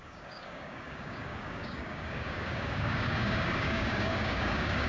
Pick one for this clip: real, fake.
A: fake